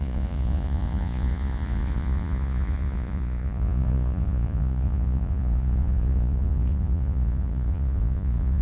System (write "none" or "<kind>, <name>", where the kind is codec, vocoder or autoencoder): vocoder, Vocos